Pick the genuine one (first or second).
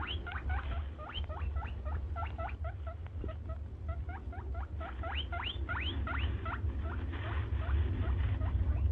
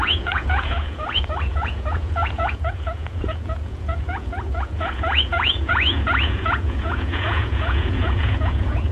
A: first